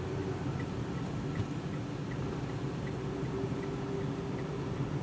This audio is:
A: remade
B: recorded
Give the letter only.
B